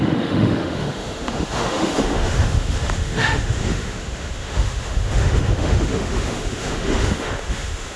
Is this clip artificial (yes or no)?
yes